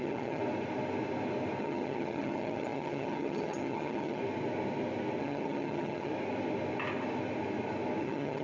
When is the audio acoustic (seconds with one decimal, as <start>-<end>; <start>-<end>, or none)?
0.4-1.6; 4.2-5.2; 6.1-8.0